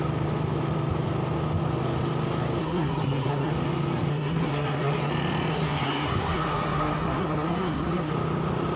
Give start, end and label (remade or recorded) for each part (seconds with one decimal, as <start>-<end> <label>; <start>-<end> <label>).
0.0-2.6 recorded; 2.6-3.5 remade; 3.5-4.1 recorded; 4.1-5.1 remade; 5.1-5.5 recorded; 5.5-8.1 remade; 8.1-8.8 recorded